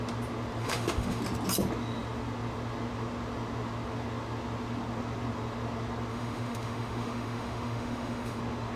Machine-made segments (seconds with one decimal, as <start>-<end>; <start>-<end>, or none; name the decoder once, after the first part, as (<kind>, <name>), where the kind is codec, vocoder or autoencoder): 0.6-1.2 (autoencoder, DAC-VAE); 6.1-8.4